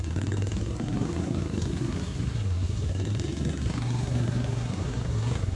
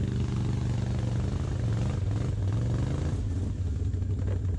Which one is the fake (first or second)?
first